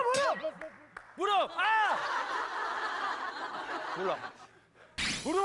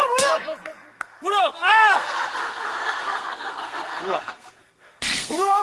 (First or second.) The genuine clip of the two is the first